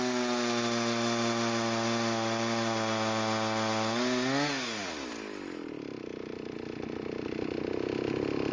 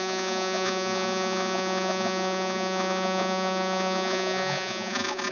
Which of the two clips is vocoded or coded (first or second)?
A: second